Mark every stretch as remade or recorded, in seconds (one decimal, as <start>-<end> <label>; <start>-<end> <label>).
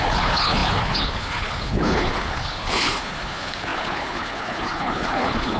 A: 0.0-5.6 remade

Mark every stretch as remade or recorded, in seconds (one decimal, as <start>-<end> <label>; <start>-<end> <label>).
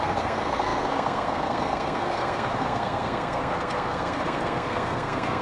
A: 0.0-5.4 remade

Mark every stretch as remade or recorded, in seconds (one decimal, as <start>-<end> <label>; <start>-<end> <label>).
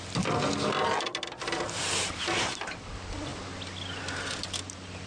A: 0.0-5.1 recorded